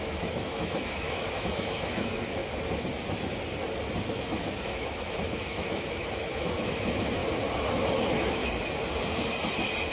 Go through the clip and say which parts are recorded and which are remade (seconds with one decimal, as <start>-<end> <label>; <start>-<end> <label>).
0.0-2.4 remade; 2.4-4.1 recorded; 4.1-7.2 remade; 7.2-8.0 recorded; 8.0-8.4 remade; 8.4-9.9 recorded